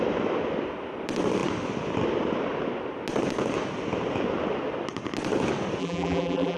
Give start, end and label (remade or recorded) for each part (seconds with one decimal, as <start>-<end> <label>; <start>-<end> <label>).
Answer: 0.0-5.8 recorded; 5.8-6.6 remade